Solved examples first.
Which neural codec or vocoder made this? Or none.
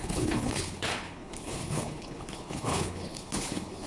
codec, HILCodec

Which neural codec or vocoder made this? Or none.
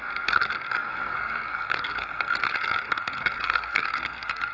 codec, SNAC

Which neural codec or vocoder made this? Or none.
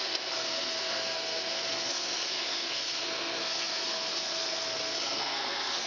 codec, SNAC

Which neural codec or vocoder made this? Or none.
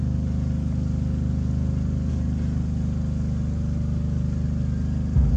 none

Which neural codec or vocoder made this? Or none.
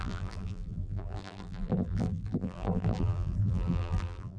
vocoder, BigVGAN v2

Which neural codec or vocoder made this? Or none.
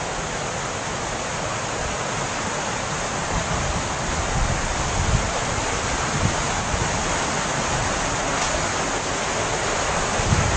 none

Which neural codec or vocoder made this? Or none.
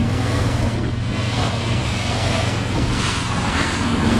codec, SNAC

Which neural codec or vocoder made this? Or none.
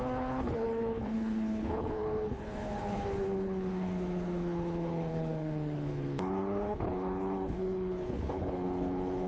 codec, HILCodec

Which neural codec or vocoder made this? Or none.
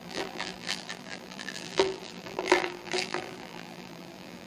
vocoder, BigVGAN v2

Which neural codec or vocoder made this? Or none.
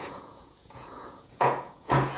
vocoder, Vocos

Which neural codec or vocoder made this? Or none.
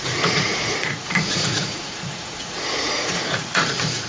vocoder, Vocos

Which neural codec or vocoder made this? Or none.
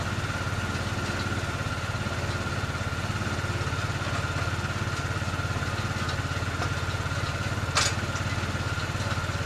none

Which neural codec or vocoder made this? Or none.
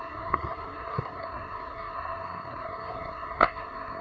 codec, SNAC